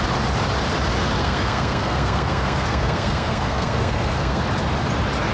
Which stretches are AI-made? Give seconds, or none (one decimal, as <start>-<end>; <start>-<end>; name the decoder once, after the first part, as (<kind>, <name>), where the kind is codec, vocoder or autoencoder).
1.2-4.4 (codec, SNAC)